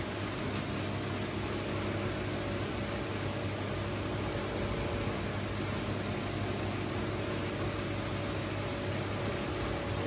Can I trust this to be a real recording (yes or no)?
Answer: yes